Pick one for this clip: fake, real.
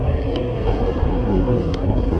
fake